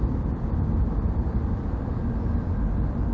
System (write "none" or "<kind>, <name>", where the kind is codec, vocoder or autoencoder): none